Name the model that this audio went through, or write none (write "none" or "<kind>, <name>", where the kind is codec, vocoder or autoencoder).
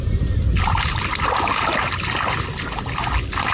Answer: none